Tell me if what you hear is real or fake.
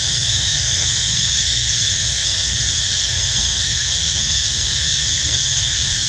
fake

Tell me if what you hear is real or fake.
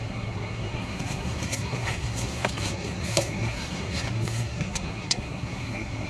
fake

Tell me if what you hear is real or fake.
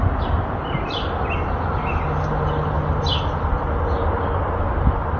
real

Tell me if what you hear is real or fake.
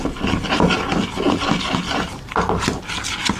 real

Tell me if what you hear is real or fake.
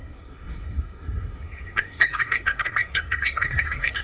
fake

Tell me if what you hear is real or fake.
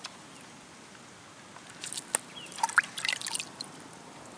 real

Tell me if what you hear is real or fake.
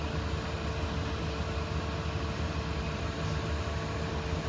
real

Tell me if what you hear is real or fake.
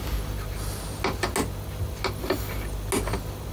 real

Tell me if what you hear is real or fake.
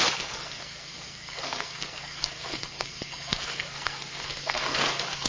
fake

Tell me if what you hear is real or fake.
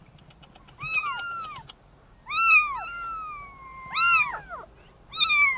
real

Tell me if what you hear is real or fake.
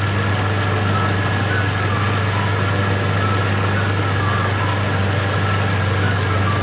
real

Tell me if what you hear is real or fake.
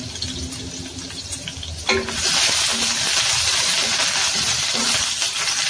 real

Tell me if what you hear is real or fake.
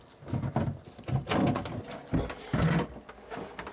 real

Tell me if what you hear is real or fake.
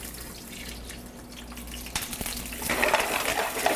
real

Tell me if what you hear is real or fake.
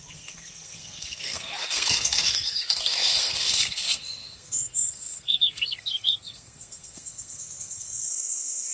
fake